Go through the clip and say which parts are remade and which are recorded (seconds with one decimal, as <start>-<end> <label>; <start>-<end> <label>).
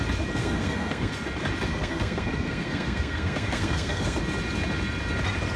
0.0-0.4 recorded; 0.4-1.1 remade; 1.1-1.7 recorded; 1.7-4.2 remade; 4.2-5.6 recorded